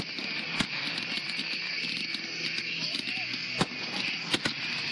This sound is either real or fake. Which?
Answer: real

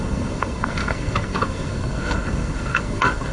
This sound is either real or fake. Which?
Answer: fake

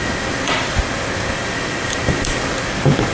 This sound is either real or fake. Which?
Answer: fake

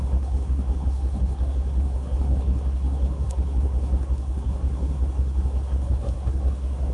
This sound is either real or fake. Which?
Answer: fake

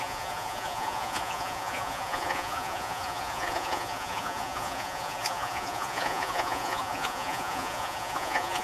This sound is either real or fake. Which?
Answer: fake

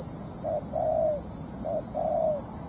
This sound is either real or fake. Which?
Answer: real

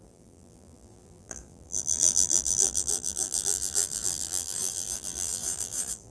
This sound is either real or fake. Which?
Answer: fake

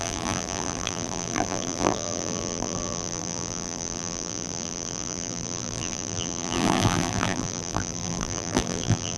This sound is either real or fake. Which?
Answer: fake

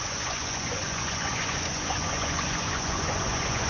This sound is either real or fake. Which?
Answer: fake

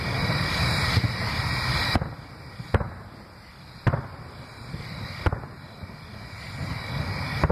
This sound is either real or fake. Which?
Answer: real